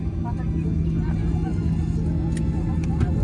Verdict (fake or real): real